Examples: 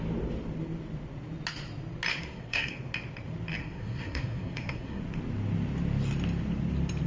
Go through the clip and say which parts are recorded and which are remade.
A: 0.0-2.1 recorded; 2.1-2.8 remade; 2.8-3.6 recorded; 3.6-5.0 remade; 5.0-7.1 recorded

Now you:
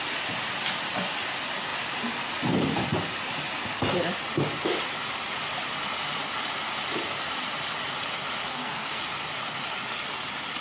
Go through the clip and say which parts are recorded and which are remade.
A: 0.0-8.5 recorded; 8.5-9.0 remade; 9.0-10.6 recorded

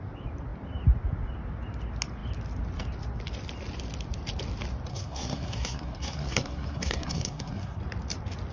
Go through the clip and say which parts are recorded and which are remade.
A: 0.0-4.9 recorded; 4.9-7.8 remade; 7.8-8.5 recorded

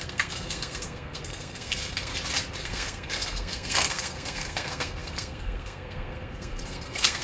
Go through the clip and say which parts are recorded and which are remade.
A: 0.0-2.1 remade; 2.1-2.6 recorded; 2.6-7.2 remade

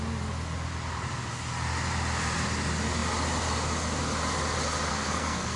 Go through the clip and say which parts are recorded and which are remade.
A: 0.0-4.9 recorded; 4.9-5.6 remade